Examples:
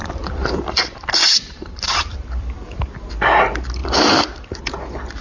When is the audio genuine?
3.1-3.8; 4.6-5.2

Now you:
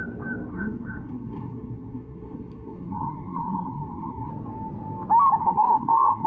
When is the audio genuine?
0.0-0.5; 4.3-5.4

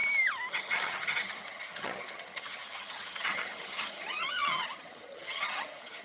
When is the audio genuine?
0.0-0.5

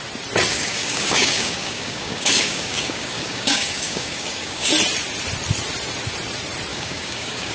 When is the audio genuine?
0.0-0.5; 4.7-6.7

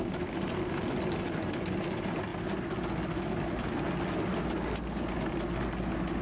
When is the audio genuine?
0.0-6.2